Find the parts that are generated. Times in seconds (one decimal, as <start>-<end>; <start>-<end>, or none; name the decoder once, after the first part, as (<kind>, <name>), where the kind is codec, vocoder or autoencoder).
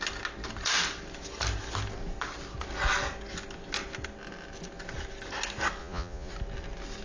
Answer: 5.8-6.3 (vocoder, Vocos)